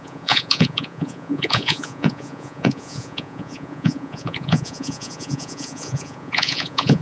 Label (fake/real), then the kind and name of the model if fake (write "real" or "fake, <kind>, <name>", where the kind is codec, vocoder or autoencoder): fake, vocoder, Vocos